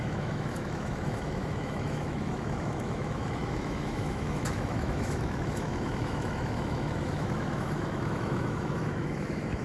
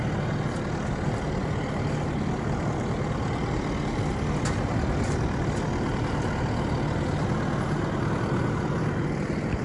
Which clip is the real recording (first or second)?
second